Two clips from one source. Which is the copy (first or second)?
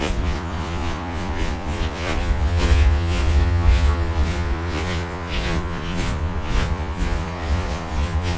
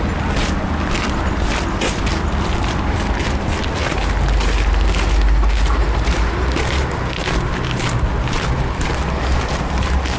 first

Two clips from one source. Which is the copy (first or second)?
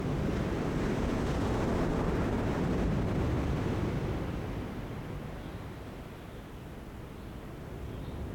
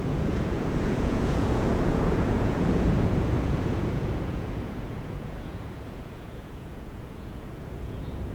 second